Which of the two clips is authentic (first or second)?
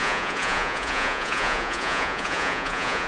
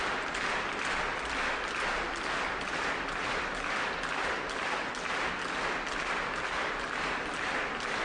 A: second